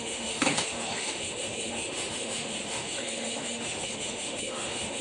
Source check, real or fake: fake